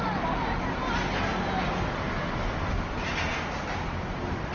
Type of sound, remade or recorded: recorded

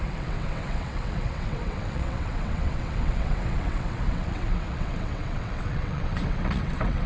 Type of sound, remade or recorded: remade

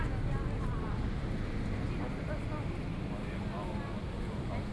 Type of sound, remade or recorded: recorded